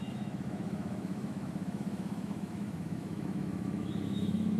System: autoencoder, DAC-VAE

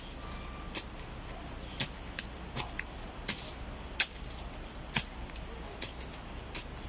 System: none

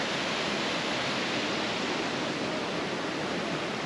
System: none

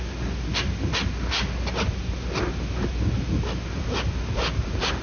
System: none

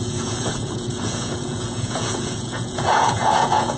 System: vocoder, Vocos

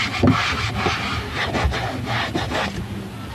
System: none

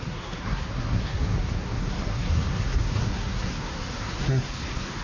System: codec, SNAC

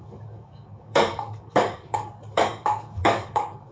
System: codec, DAC